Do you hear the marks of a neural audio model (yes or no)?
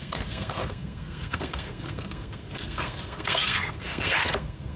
yes